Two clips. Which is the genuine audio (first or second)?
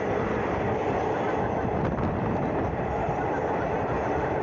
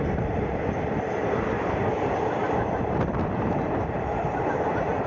first